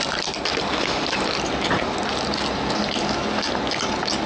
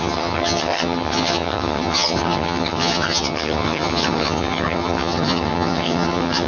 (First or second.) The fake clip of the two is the second